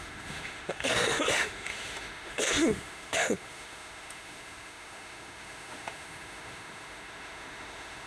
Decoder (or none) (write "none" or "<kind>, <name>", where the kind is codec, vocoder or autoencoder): autoencoder, DAC-VAE